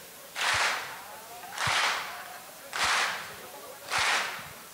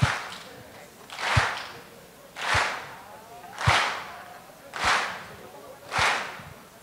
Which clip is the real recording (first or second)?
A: second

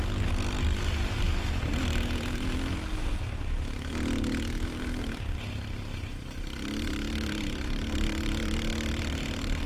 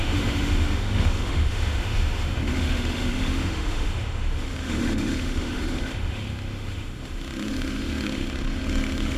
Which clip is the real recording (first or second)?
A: first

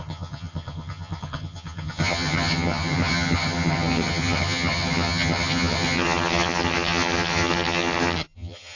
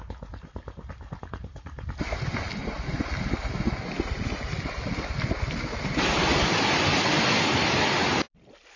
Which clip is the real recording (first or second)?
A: second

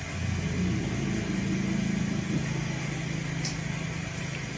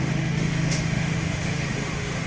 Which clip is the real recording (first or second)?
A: first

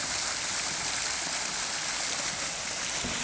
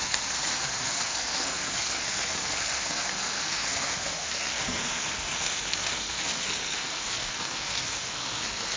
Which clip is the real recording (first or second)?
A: first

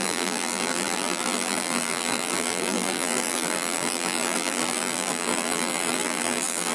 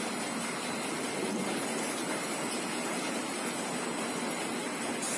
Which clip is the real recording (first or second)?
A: second